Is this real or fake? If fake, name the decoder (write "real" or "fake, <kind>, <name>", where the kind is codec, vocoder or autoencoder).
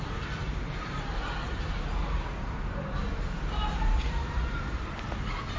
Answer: fake, vocoder, BigVGAN v2